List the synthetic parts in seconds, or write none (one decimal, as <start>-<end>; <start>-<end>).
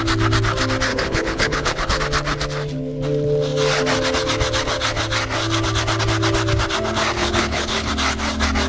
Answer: 0.9-2.0; 7.2-7.9